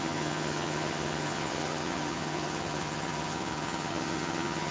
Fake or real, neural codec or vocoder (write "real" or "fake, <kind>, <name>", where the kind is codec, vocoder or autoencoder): fake, vocoder, HiFi-GAN